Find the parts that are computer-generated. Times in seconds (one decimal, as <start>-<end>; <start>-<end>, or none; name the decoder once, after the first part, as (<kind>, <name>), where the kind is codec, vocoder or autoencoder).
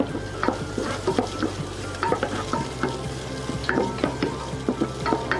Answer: 0.4-2.8 (vocoder, BigVGAN v2); 3.6-4.4